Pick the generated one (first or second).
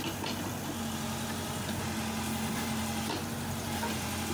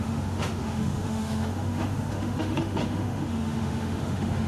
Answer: second